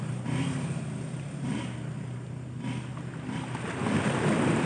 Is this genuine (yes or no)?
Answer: yes